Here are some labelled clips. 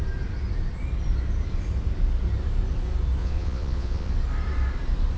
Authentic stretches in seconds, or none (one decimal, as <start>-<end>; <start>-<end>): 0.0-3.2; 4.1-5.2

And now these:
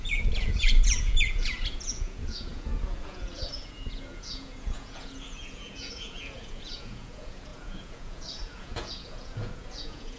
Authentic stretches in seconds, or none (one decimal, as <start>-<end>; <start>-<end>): none

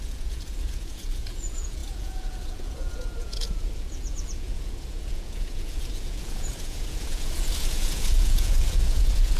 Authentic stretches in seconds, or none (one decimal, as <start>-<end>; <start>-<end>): none